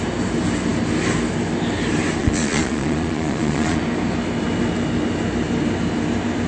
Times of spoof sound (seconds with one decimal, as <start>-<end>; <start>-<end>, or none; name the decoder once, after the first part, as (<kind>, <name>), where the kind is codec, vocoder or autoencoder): 2.2-3.8 (vocoder, Vocos)